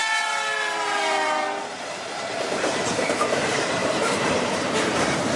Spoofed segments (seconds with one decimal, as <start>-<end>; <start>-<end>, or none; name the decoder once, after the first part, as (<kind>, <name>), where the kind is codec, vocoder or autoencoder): 0.0-5.4 (vocoder, BigVGAN v2)